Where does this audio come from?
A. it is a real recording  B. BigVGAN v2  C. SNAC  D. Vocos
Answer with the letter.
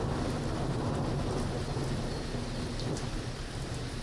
A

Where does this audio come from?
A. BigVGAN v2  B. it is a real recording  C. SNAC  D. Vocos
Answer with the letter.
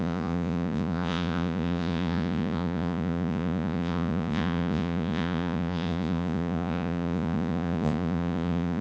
D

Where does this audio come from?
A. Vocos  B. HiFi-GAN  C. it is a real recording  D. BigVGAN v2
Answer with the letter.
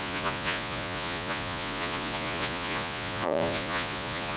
A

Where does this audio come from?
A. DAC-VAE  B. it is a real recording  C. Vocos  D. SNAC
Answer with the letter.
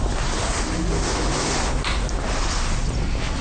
B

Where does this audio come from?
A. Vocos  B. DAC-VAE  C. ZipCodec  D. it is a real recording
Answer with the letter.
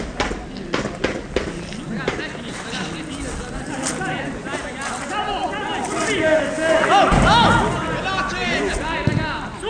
D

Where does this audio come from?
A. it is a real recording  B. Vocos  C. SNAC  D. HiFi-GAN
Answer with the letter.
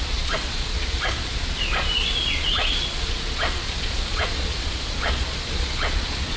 B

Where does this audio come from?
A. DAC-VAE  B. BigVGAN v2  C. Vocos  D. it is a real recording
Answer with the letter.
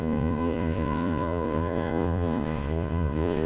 C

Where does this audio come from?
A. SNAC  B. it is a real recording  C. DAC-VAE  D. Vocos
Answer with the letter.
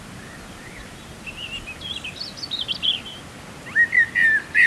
B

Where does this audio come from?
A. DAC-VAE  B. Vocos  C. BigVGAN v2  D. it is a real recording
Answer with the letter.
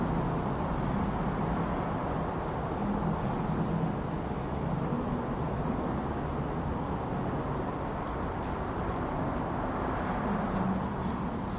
D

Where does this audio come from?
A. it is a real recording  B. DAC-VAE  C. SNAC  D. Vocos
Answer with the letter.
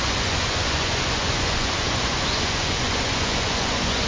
D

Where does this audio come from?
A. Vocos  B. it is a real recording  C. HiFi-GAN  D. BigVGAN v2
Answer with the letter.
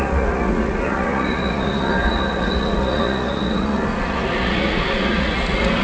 A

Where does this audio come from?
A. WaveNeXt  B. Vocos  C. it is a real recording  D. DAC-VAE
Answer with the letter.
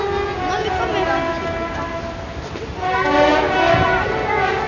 C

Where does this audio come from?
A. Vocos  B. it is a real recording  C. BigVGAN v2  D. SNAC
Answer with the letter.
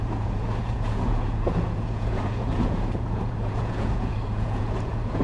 A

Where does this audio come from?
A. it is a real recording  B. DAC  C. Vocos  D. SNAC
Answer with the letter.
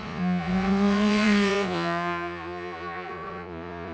C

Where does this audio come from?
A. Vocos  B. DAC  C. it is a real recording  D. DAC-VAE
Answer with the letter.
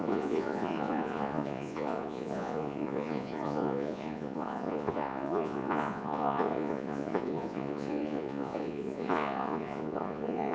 A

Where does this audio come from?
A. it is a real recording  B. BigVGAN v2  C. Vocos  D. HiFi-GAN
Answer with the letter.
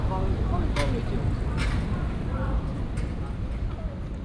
A